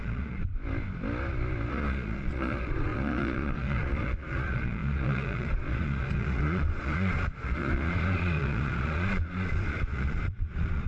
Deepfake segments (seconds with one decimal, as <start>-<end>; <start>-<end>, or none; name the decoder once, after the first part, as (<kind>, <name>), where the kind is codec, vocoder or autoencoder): 0.0-0.5 (vocoder, Vocos); 1.7-10.9